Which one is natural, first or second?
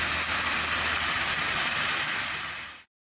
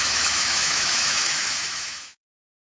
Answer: first